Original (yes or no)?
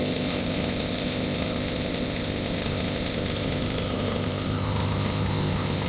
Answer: no